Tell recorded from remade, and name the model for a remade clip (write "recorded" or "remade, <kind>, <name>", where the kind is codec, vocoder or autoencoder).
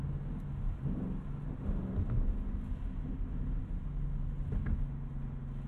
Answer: recorded